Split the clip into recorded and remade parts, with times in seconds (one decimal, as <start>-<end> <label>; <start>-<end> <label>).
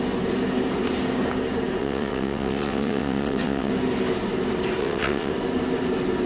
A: 0.0-1.8 recorded; 1.8-3.7 remade; 3.7-4.8 recorded; 4.8-5.3 remade; 5.3-6.3 recorded